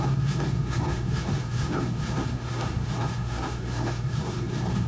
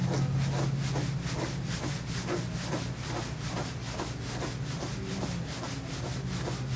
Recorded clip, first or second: second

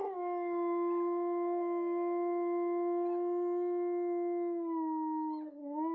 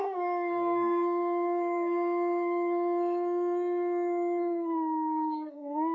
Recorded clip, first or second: first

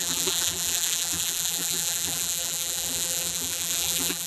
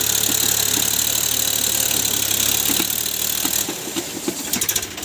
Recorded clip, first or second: second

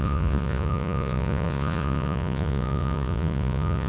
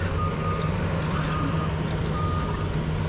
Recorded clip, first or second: second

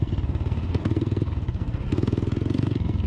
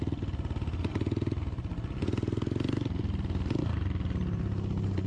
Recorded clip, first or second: second